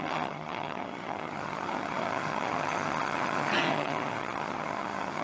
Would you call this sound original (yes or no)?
no